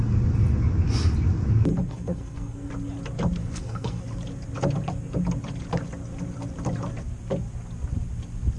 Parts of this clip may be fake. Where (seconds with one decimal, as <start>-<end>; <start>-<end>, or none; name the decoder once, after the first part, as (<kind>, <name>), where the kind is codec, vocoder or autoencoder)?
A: 1.7-2.7 (codec, SNAC); 3.4-4.0

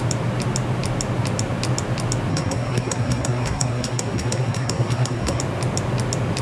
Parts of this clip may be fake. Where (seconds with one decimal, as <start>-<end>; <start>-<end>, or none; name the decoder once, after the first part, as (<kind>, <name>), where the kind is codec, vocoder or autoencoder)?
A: 2.3-5.4 (codec, SNAC)